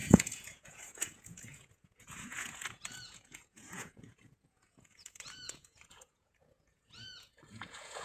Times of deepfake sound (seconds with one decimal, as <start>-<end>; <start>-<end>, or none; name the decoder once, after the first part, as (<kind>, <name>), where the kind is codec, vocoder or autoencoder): 0.0-8.0 (vocoder, Vocos)